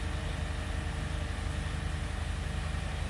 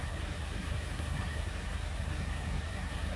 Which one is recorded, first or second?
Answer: first